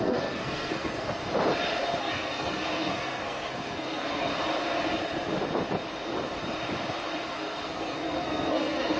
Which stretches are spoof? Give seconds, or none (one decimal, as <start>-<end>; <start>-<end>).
0.0-1.2; 2.0-4.3; 7.3-9.0